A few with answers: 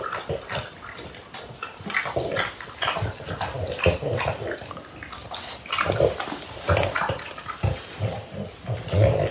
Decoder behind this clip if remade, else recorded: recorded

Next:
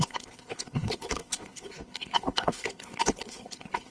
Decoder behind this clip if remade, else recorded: remade, codec, HILCodec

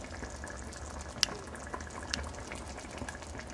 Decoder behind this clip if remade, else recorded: recorded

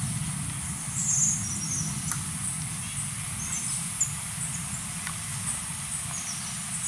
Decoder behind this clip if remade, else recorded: recorded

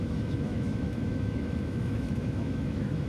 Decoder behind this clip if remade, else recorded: remade, autoencoder, DAC-VAE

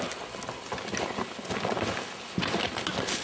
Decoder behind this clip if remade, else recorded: recorded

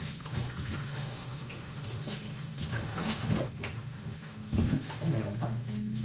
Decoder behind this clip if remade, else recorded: remade, autoencoder, DAC-VAE